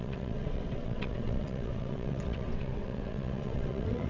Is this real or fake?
fake